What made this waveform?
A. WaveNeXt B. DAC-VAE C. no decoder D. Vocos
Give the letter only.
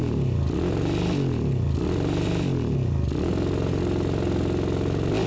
C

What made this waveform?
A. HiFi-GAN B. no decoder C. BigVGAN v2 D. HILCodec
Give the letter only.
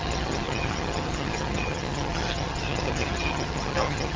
A